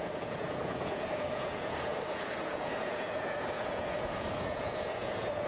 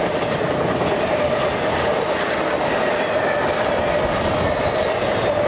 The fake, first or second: first